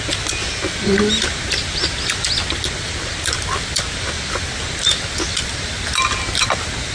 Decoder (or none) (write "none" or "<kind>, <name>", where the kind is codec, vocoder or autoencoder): none